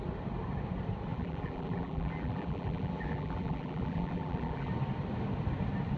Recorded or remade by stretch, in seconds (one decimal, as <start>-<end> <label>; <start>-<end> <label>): 0.0-1.1 recorded; 1.1-4.7 remade; 4.7-6.0 recorded